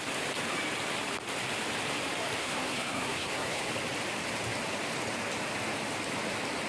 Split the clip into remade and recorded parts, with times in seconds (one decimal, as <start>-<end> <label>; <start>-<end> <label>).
0.0-2.4 recorded; 2.4-3.7 remade; 3.7-6.7 recorded